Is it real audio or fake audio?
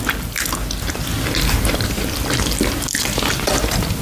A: real